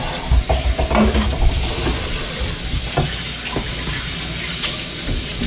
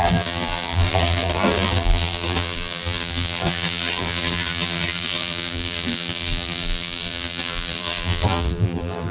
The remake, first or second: second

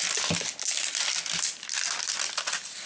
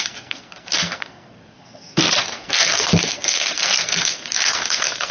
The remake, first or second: second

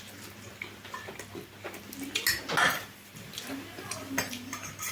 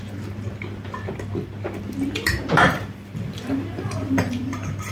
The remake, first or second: second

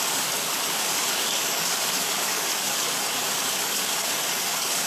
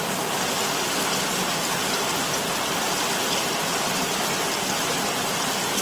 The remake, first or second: first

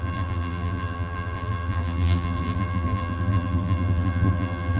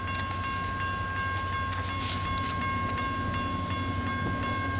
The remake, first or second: first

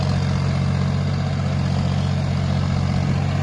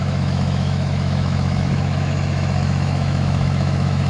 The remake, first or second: second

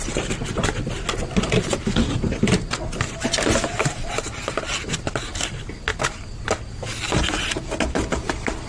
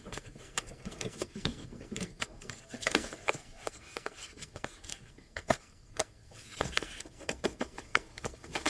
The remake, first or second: second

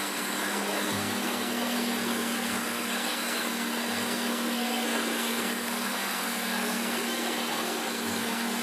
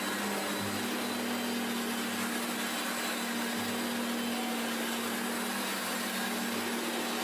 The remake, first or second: first